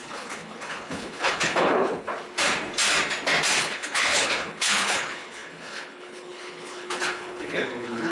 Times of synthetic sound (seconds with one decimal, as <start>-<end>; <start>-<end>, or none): 0.0-2.1; 3.6-8.1